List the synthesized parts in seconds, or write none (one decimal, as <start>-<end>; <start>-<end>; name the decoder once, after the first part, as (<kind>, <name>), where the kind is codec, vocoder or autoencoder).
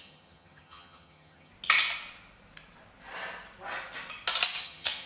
0.0-1.5 (vocoder, HiFi-GAN); 4.6-5.1